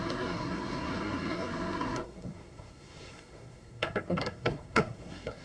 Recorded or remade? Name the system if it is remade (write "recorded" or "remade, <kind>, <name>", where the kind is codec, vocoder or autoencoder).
remade, codec, SNAC